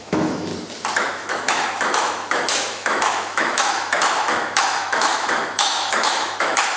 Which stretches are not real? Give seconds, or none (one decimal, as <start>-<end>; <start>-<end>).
0.0-0.5; 1.0-6.8